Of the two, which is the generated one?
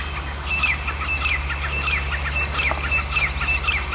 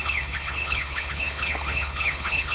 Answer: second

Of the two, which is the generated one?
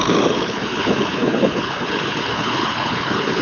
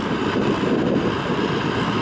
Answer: first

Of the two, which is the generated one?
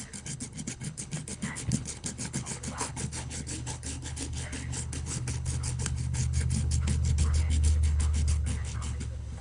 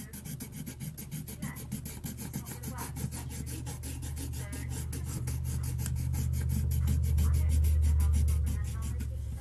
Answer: first